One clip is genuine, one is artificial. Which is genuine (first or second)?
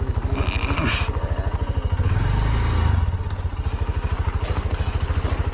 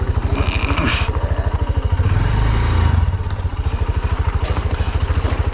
first